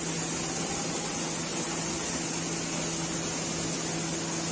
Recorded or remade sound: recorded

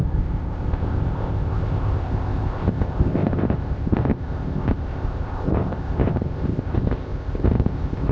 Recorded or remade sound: remade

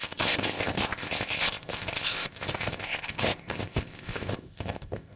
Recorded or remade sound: remade